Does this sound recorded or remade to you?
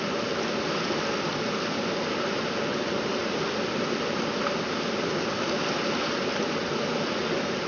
recorded